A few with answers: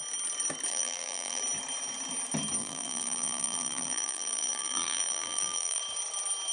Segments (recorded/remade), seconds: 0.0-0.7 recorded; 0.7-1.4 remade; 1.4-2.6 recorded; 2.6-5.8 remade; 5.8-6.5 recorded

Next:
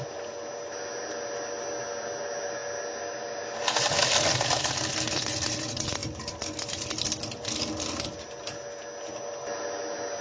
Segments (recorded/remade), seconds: 0.0-10.2 recorded

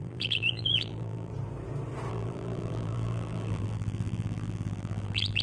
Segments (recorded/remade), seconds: 0.0-1.3 remade; 1.3-2.1 recorded; 2.1-5.4 remade

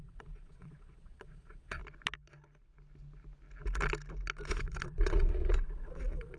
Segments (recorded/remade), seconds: 0.0-1.8 remade; 1.8-4.5 recorded; 4.5-6.4 remade

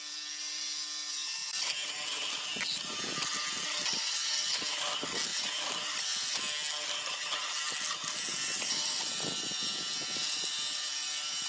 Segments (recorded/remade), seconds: 0.0-1.4 recorded; 1.4-2.9 remade; 2.9-5.3 recorded; 5.3-6.0 remade; 6.0-8.3 recorded; 8.3-9.0 remade; 9.0-11.5 recorded